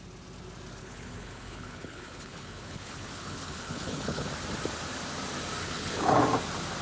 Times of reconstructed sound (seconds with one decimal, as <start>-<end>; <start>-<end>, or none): 0.8-4.3; 5.6-6.2